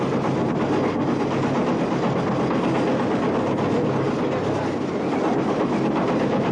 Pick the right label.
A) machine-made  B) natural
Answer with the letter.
B